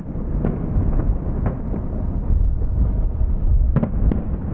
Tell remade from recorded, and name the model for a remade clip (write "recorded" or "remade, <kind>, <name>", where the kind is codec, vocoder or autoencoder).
recorded